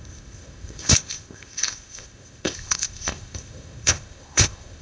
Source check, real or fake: fake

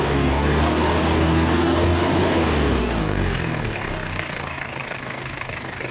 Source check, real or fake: fake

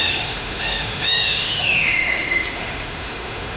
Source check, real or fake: fake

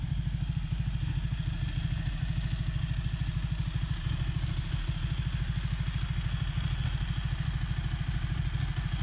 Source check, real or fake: real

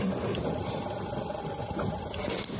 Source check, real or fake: real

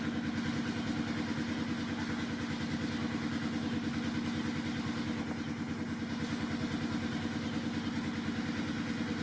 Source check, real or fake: real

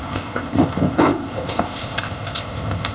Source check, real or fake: fake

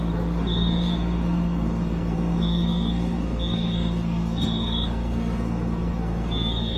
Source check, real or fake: fake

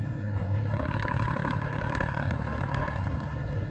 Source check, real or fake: fake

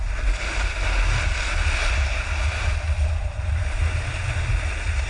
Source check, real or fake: real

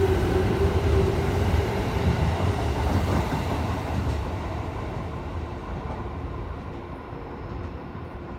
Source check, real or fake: fake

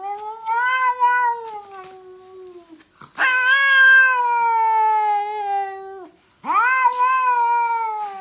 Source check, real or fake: real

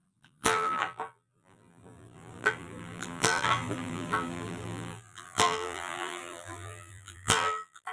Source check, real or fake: fake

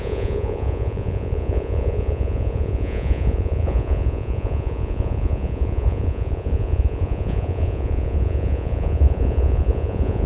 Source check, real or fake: fake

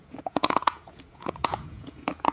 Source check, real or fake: fake